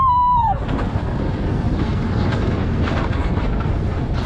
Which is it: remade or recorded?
remade